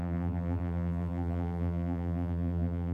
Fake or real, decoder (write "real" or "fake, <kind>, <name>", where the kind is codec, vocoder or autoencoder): fake, vocoder, BigVGAN v2